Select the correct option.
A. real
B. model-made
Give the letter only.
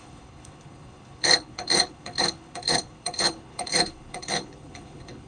B